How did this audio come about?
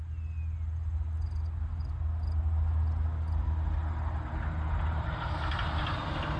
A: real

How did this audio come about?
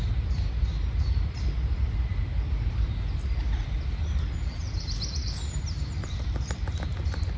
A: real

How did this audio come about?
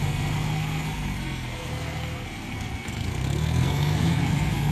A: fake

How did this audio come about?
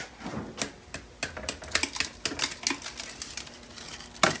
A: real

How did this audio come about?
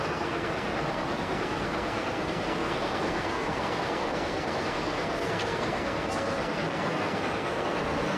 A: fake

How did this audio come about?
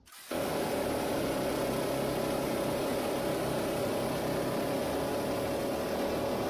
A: real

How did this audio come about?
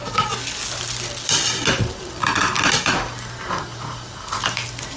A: real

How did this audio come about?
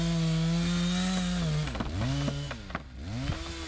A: real